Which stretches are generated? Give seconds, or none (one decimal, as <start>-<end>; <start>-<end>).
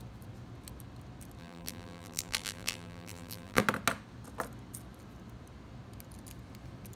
1.4-3.6